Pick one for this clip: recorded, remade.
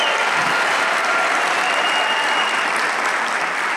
recorded